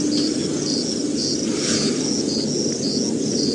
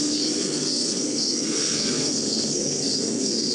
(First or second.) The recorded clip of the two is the first